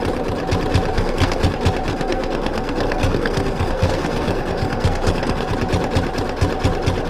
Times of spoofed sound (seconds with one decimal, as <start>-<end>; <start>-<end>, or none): 0.9-1.5; 1.9-5.5